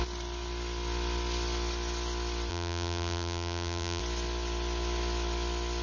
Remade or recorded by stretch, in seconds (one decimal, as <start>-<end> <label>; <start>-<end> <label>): 0.0-2.5 recorded; 2.5-4.0 remade; 4.0-5.8 recorded